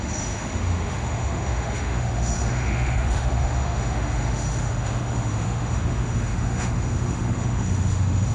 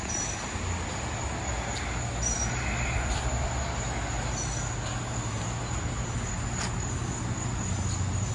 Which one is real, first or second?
second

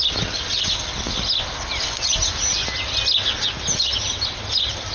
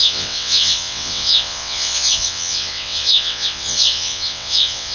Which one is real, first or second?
first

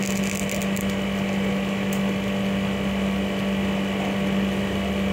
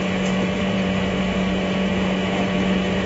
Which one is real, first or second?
first